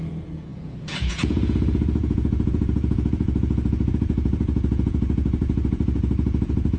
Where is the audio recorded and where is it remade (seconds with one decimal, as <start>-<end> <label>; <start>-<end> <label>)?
0.0-6.8 remade